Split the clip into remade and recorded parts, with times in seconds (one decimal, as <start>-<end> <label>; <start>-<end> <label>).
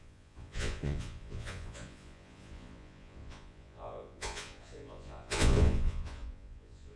0.0-7.0 remade